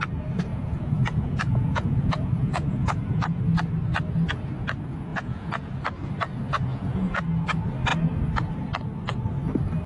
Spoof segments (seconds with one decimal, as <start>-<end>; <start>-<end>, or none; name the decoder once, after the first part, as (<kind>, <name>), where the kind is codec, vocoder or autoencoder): 0.5-3.4 (vocoder, Vocos); 5.1-5.7; 6.7-7.2